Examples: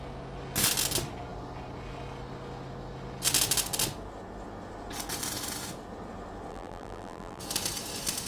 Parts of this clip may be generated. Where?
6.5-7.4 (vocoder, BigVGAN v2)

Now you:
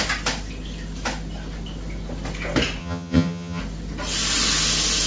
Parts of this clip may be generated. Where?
2.8-3.6 (vocoder, HiFi-GAN)

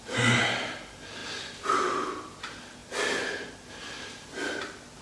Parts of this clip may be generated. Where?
none

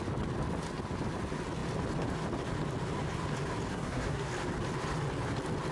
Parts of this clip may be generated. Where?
3.7-4.3 (codec, SNAC)

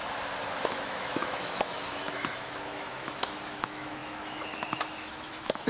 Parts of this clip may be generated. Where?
0.6-5.7 (autoencoder, DAC-VAE)

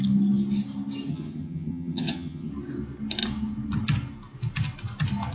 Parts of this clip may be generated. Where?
1.1-2.5 (vocoder, HiFi-GAN)

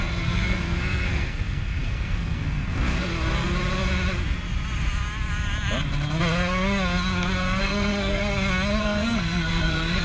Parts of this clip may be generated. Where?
0.0-3.1 (codec, SNAC); 7.6-8.2; 8.8-10.0